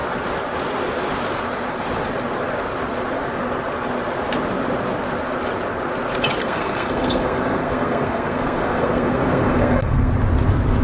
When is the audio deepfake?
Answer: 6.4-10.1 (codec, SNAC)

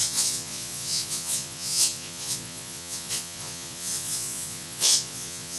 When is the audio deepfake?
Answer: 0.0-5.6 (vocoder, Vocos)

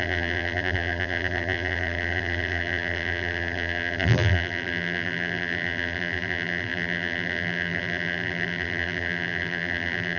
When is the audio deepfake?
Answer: 0.0-10.2 (vocoder, BigVGAN v2)

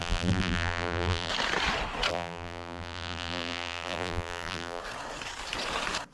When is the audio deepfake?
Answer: 0.0-1.3 (vocoder, BigVGAN v2); 2.1-4.8

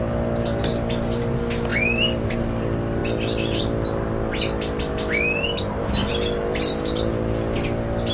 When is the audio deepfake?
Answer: none

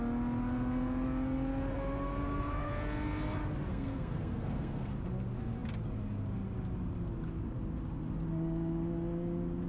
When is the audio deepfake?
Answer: 1.7-2.7 (codec, SNAC); 3.7-4.9

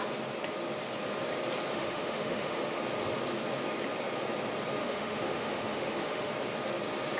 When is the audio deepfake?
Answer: 1.7-2.8 (autoencoder, DAC-VAE); 4.8-6.3

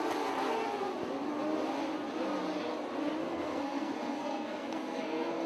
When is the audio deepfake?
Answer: 3.2-5.5 (codec, SNAC)